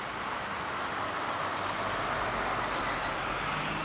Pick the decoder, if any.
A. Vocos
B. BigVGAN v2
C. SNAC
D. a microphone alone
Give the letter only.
D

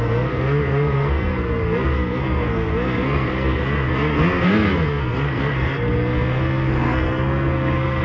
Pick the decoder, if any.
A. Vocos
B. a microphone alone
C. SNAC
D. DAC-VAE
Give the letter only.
C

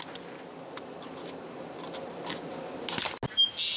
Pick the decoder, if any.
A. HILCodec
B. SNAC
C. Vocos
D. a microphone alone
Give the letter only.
D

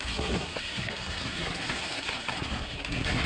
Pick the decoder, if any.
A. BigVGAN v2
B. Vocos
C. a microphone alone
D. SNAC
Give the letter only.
D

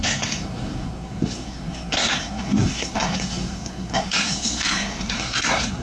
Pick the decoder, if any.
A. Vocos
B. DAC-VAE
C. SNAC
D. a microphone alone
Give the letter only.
C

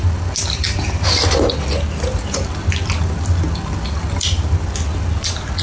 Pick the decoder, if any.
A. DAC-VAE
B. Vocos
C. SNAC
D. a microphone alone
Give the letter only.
D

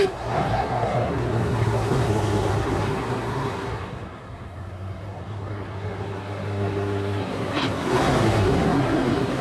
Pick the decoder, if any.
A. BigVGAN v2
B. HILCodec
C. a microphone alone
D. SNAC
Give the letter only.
D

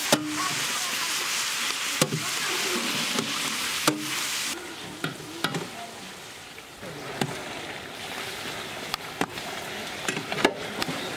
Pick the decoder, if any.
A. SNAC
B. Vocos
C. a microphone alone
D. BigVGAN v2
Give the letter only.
C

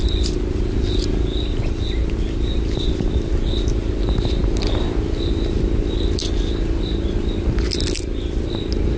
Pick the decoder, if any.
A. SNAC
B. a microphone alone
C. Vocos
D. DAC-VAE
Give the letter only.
B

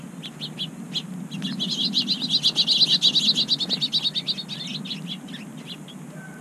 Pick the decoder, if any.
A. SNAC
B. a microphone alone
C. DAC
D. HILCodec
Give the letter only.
B